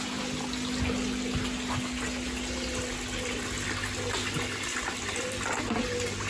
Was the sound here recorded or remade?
recorded